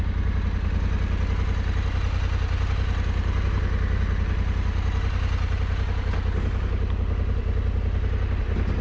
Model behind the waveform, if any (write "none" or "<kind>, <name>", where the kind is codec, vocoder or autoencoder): none